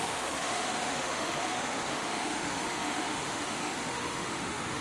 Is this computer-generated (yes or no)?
yes